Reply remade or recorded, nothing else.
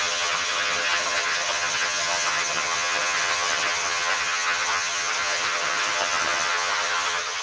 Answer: remade